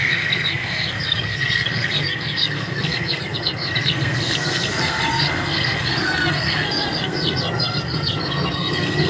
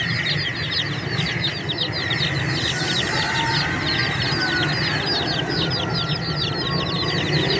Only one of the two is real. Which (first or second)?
second